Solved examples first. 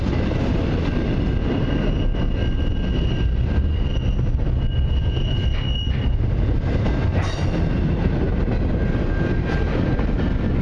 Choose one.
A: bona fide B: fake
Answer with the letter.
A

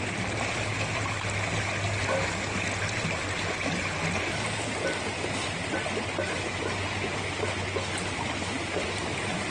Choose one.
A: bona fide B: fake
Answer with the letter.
A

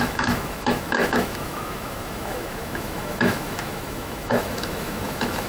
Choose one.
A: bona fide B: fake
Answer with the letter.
B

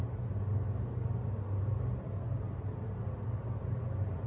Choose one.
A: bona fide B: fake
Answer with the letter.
A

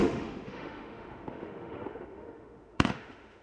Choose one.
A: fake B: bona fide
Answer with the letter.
A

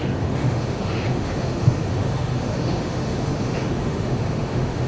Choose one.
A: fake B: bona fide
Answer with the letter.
A